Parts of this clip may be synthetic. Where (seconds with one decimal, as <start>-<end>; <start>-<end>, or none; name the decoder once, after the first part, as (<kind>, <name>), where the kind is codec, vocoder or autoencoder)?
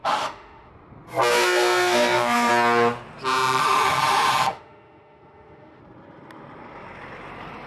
0.0-0.7 (autoencoder, DAC-VAE); 1.3-2.5; 3.6-5.8